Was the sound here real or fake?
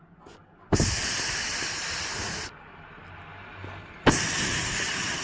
real